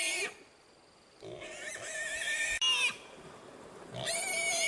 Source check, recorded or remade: recorded